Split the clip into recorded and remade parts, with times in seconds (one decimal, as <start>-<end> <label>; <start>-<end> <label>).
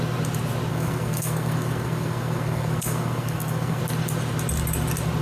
0.0-0.7 recorded; 0.7-3.8 remade; 3.8-5.2 recorded